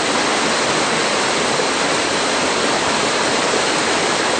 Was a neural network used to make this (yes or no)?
no